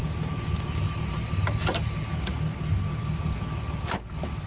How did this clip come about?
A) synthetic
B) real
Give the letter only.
B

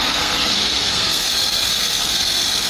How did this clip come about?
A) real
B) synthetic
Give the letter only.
B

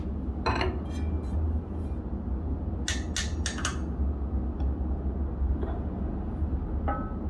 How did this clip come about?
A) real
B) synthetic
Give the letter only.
A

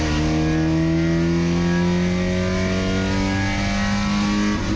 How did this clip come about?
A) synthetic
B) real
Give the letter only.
B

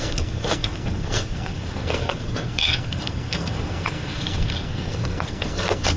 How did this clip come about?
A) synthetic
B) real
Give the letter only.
A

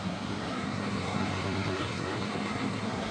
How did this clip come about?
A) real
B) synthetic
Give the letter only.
B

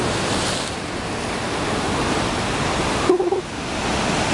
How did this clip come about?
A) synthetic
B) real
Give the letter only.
B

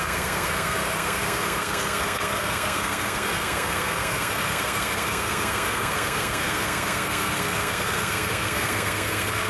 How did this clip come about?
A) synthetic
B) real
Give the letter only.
A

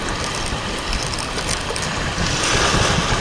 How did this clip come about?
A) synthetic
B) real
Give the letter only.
B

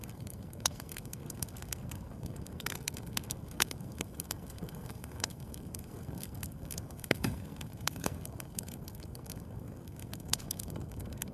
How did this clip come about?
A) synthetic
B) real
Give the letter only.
A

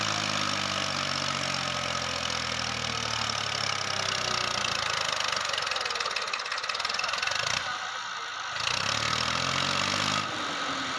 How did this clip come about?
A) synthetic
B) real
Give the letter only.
B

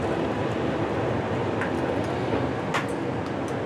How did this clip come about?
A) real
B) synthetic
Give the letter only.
A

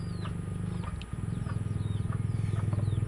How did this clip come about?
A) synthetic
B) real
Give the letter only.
B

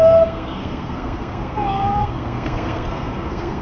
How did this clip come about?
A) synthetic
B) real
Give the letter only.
A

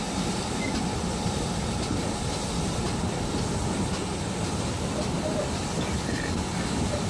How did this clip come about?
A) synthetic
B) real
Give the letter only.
B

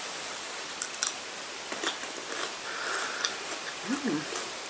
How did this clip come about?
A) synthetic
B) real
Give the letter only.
B